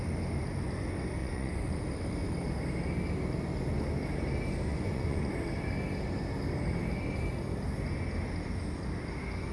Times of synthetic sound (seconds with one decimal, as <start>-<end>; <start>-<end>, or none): 1.2-1.8; 4.7-5.3